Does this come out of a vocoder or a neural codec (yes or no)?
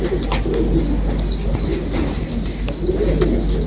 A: no